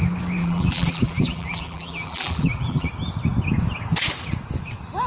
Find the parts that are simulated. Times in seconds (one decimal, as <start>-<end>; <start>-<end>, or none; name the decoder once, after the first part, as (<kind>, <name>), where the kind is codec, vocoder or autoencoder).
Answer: 0.4-2.9 (vocoder, BigVGAN v2)